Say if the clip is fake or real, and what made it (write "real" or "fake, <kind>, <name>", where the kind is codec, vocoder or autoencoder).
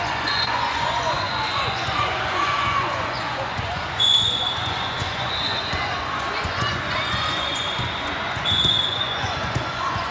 fake, vocoder, Vocos